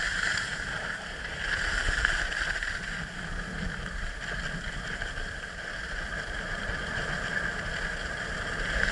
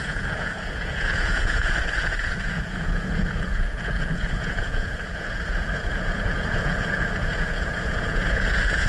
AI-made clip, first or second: second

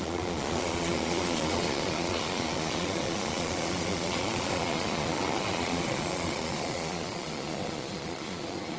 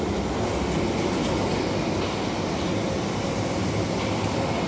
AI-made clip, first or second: first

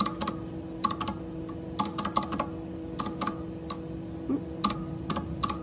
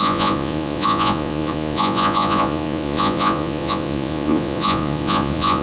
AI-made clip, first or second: second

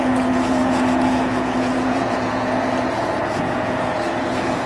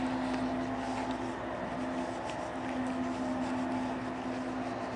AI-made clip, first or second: first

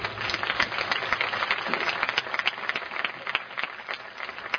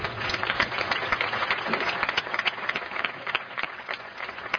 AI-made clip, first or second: second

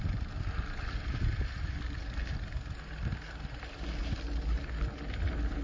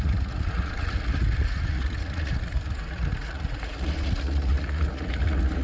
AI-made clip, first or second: second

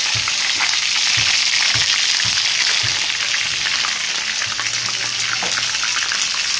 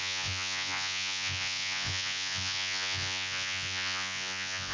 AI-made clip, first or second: second